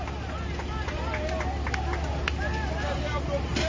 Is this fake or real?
real